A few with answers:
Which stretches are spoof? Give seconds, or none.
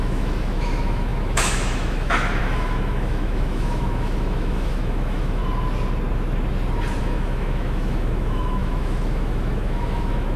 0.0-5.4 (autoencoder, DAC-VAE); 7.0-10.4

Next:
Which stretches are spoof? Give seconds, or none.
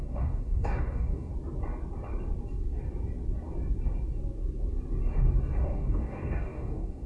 0.0-1.3 (codec, DAC); 5.6-7.1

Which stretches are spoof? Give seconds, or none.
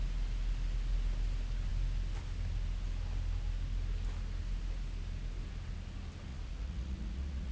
6.3-7.5 (vocoder, Vocos)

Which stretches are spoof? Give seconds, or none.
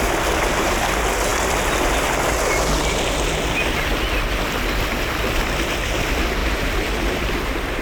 6.4-7.0 (vocoder, BigVGAN v2)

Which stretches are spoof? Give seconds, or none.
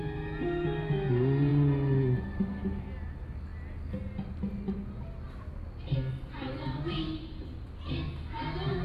none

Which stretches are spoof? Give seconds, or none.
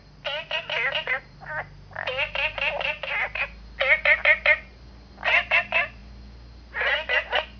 none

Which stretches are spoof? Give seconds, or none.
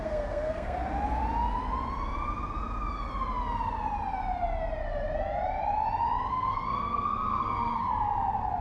0.0-0.8 (codec, SNAC); 6.3-7.9